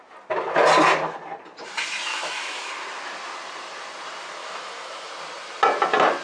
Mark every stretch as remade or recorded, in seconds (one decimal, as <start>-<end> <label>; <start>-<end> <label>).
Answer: 0.0-2.1 recorded; 2.1-2.7 remade; 2.7-4.4 recorded; 4.4-5.1 remade; 5.1-6.2 recorded